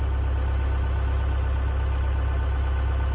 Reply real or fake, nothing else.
real